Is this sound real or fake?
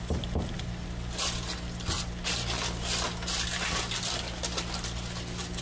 real